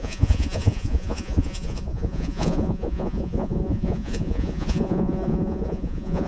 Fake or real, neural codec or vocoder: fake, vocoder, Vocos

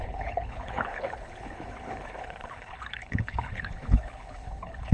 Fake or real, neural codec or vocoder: fake, codec, HILCodec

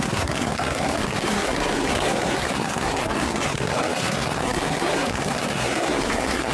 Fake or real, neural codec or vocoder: fake, codec, SNAC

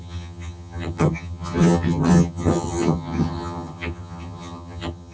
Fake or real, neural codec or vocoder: fake, vocoder, HiFi-GAN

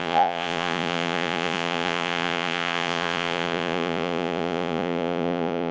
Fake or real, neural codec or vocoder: fake, vocoder, Vocos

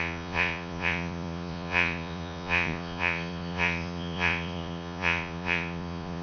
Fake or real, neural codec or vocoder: fake, vocoder, Vocos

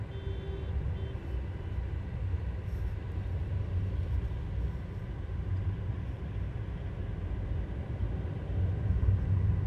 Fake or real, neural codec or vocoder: real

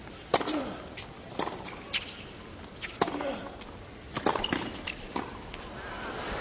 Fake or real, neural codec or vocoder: real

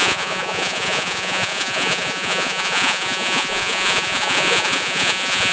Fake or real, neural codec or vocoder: fake, vocoder, Vocos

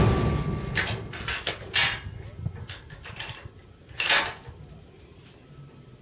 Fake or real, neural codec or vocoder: real